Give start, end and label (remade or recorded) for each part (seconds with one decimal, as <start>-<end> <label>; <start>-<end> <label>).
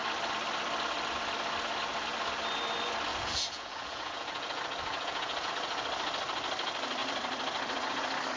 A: 0.0-3.1 recorded; 3.1-5.5 remade; 5.5-8.4 recorded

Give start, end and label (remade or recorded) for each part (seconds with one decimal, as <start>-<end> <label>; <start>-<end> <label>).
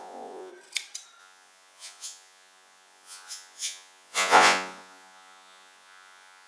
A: 0.0-0.5 remade; 0.5-1.2 recorded; 1.2-6.5 remade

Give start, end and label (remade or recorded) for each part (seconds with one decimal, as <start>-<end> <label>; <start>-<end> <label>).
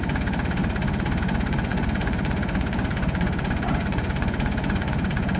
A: 0.0-0.6 remade; 0.6-1.2 recorded; 1.2-5.4 remade